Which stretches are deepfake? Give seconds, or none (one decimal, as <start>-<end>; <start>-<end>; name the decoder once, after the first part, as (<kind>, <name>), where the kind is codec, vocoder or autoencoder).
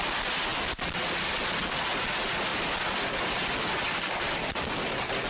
none